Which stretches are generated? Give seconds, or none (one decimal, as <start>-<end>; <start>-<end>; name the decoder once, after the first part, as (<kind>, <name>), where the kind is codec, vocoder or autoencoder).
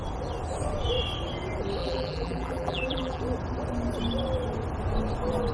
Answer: 1.8-3.2 (vocoder, BigVGAN v2)